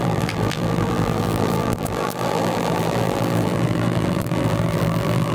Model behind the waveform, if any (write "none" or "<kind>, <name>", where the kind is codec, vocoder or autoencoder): vocoder, BigVGAN v2